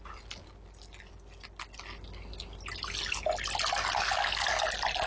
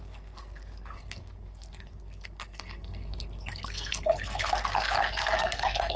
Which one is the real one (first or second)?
first